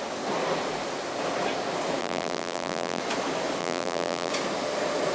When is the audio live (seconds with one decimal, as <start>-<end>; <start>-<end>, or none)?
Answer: 0.0-2.0; 3.0-3.6; 4.3-5.1

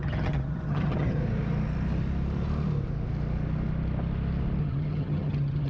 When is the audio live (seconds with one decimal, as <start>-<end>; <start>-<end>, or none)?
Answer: 1.2-4.6

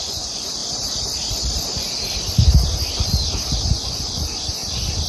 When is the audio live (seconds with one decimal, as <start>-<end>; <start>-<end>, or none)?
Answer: 0.6-3.7; 4.6-5.1

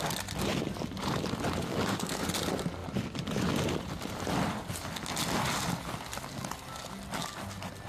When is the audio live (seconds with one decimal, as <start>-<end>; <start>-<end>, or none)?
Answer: 0.0-1.7; 2.2-7.9

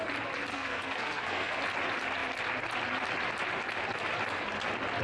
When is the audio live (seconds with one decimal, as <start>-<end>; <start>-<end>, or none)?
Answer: 0.0-0.5; 1.6-5.0

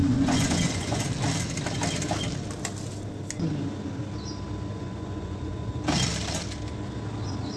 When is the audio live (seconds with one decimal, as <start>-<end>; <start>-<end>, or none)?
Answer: 1.0-4.7; 5.7-7.6

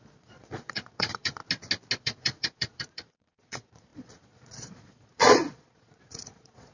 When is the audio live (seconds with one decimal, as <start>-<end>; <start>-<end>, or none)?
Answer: 1.4-2.0